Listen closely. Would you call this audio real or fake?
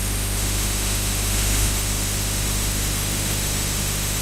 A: fake